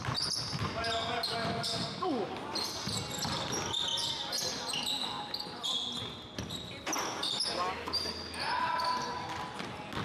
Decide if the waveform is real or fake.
real